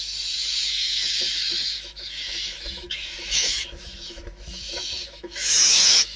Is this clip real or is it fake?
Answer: fake